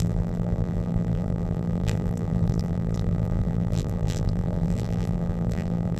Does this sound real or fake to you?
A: fake